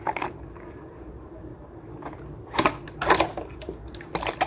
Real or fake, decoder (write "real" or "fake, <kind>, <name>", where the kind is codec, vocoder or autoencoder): real